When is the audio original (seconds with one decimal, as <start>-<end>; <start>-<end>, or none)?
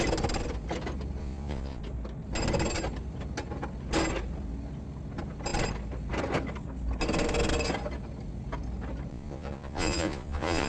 0.0-1.2; 1.8-9.1